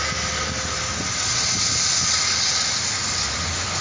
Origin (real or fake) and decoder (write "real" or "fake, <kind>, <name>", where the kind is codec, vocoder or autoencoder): real